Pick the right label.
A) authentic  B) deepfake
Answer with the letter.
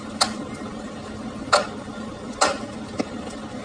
A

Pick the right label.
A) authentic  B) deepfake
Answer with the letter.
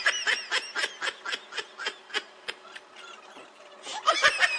A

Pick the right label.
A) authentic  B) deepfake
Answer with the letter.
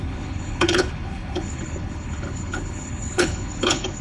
B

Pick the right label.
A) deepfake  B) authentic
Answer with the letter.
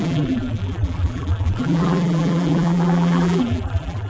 A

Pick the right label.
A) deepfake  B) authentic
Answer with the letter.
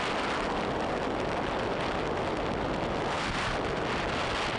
B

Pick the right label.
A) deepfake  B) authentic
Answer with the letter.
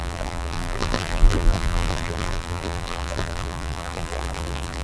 A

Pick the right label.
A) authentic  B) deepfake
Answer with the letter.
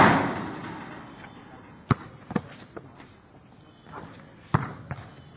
A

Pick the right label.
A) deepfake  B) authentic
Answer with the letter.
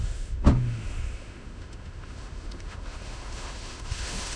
A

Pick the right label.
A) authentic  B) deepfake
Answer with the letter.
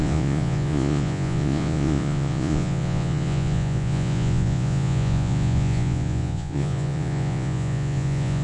B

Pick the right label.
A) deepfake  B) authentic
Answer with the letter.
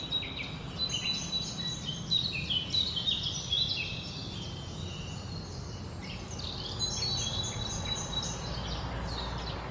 B